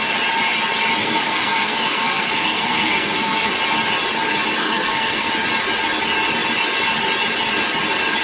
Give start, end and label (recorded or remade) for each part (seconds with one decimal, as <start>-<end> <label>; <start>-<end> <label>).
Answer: 0.0-1.0 recorded; 1.0-3.5 remade; 3.5-4.6 recorded; 4.6-5.3 remade; 5.3-8.2 recorded